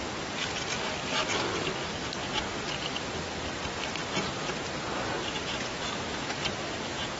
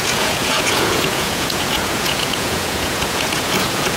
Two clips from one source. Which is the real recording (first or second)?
first